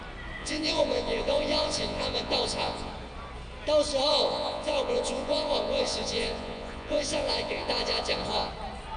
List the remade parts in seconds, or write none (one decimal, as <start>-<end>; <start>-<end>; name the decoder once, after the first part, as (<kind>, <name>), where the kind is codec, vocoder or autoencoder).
0.4-2.9 (vocoder, Vocos); 4.1-8.5